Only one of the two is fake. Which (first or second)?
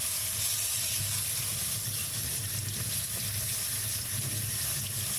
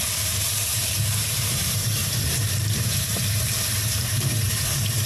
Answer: second